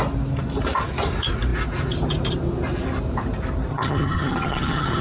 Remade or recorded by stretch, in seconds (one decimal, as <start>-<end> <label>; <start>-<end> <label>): 0.0-3.7 recorded; 3.7-5.0 remade